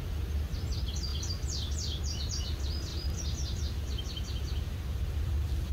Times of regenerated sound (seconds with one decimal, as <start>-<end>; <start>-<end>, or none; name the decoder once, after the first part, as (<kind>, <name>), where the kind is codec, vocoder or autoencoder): 2.9-3.6 (vocoder, BigVGAN v2)

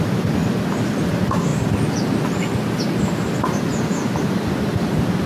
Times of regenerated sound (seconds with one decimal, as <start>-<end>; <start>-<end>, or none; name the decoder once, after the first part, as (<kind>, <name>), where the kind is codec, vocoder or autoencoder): 0.0-0.4 (vocoder, BigVGAN v2); 1.1-1.5; 4.7-5.3

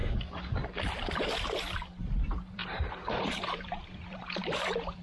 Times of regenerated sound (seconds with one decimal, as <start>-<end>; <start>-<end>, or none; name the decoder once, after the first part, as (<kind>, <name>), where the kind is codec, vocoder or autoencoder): 1.1-5.0 (vocoder, BigVGAN v2)